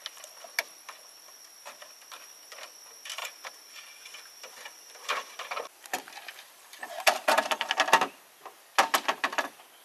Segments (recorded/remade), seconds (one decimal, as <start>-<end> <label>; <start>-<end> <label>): 0.0-3.2 recorded; 3.2-3.8 remade; 3.8-5.0 recorded; 5.0-7.7 remade; 7.7-9.8 recorded